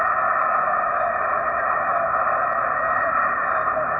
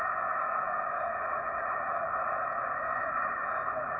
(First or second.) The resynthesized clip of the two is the second